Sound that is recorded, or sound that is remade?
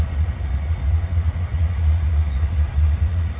remade